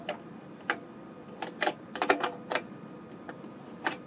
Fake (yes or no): no